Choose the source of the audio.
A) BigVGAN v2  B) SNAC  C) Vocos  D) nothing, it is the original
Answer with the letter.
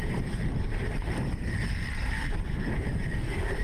A